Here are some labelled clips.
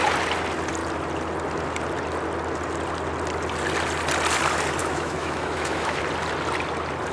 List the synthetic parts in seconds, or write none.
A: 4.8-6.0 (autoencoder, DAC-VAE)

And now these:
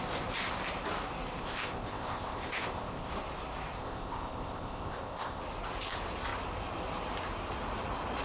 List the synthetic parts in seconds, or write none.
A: 1.4-3.1 (codec, ZipCodec); 3.8-5.4